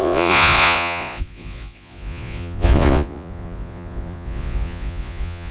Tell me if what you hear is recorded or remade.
remade